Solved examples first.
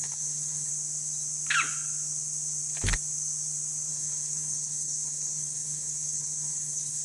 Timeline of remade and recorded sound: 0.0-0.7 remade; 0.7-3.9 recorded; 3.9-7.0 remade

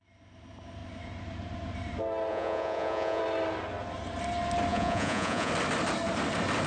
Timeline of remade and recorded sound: 0.0-2.3 recorded; 2.3-3.2 remade; 3.2-4.7 recorded; 4.7-5.5 remade; 5.5-6.7 recorded

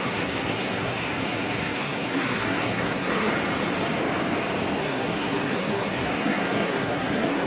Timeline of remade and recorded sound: 0.0-3.3 remade; 3.3-4.8 recorded; 4.8-7.5 remade

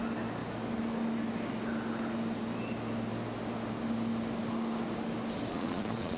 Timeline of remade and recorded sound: 0.0-5.5 recorded; 5.5-6.2 remade

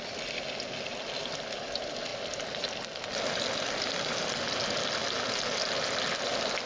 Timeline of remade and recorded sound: 0.0-6.7 recorded

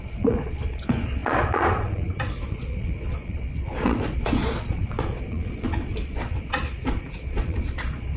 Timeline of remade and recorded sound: 0.0-8.2 remade

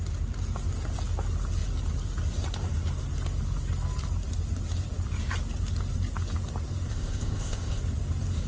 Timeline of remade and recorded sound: 0.0-6.9 recorded; 6.9-7.8 remade; 7.8-8.5 recorded

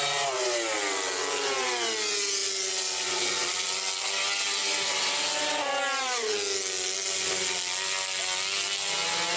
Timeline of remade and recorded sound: 0.0-9.4 recorded